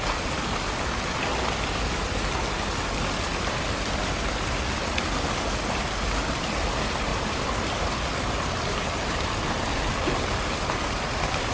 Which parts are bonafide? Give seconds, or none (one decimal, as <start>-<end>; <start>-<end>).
0.0-11.5